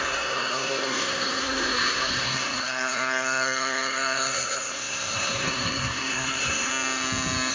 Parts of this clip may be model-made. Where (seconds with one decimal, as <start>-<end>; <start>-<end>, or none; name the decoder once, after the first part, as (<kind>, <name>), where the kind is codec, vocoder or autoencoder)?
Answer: 0.0-6.7 (codec, SNAC)

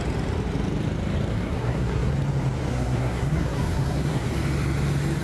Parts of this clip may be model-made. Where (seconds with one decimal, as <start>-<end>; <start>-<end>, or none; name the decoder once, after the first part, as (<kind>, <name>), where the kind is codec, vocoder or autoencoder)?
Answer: 1.3-2.1 (codec, SNAC); 2.7-4.3

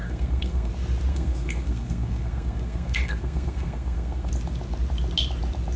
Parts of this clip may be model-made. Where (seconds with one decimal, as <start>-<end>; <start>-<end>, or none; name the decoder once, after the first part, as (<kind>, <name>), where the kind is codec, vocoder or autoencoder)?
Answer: 0.0-0.7 (codec, SNAC); 1.1-4.3

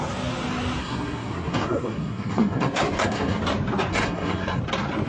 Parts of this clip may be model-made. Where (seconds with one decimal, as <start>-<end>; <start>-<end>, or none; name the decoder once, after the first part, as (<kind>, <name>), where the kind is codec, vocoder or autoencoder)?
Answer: 0.8-3.4 (codec, SNAC); 3.9-4.6